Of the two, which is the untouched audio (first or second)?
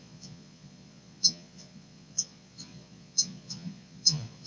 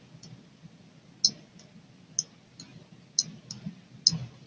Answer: second